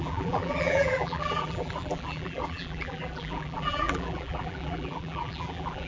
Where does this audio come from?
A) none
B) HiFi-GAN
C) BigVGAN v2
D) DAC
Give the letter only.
C